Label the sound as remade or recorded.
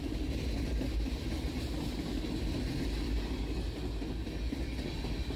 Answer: recorded